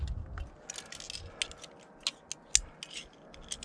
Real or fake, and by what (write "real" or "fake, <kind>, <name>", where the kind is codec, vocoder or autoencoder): real